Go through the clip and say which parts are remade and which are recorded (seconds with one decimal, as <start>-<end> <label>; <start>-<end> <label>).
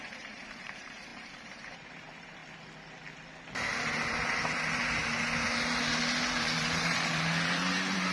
0.0-2.4 remade; 2.4-6.3 recorded; 6.3-8.1 remade